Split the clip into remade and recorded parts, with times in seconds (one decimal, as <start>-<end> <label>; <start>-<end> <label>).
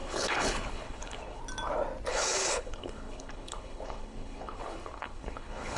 0.0-1.4 remade; 1.4-2.1 recorded; 2.1-5.8 remade